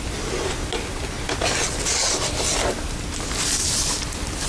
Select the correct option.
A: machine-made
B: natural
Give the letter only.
B